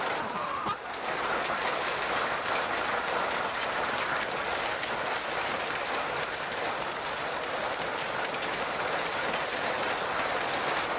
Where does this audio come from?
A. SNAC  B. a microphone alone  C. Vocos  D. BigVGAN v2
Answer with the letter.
B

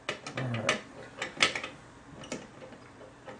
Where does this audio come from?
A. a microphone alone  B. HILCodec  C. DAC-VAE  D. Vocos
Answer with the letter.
A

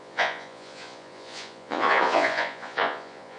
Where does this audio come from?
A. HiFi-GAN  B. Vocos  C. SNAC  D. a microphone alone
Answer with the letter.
B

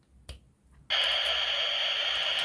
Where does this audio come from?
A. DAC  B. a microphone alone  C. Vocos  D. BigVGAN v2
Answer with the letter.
B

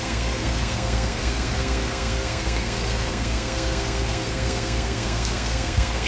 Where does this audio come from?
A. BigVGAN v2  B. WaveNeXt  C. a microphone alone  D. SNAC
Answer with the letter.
D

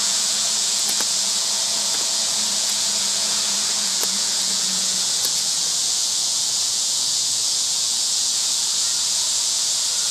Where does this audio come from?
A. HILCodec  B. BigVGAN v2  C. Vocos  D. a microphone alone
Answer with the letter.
C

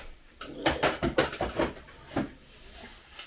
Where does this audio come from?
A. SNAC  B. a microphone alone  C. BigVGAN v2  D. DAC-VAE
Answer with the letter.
B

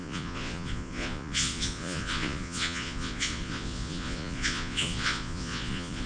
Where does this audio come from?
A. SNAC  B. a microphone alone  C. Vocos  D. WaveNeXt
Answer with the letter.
C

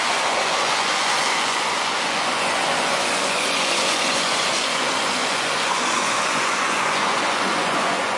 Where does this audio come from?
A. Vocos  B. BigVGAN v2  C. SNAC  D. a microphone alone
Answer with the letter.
A